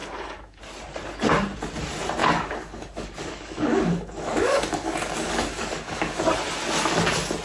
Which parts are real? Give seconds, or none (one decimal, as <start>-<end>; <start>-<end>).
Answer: 0.6-2.2; 6.2-7.4